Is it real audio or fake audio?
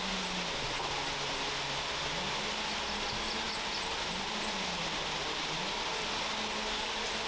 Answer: real